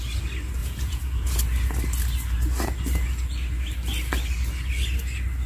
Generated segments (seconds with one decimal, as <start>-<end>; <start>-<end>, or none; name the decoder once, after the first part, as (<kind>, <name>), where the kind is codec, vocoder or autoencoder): 0.6-1.4 (vocoder, Vocos)